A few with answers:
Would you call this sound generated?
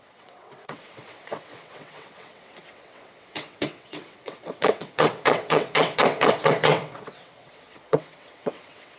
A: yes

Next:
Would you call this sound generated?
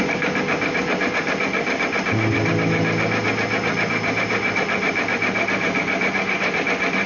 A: no